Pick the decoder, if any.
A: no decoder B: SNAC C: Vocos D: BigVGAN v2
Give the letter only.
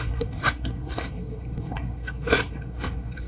B